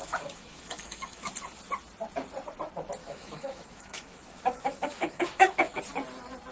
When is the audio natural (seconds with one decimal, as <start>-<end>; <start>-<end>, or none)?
1.3-3.0; 5.8-6.5